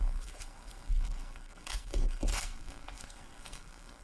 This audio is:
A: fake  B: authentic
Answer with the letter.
A